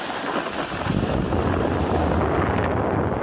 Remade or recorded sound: recorded